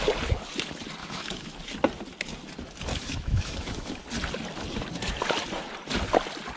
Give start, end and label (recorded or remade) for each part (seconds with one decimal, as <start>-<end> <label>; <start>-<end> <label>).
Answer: 0.0-1.0 recorded; 1.0-1.6 remade; 1.6-2.9 recorded; 2.9-4.0 remade; 4.0-6.6 recorded